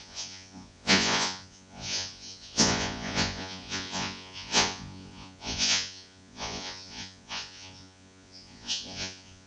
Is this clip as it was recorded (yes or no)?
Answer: no